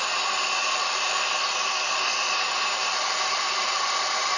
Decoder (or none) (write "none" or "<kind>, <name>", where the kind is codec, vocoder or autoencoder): none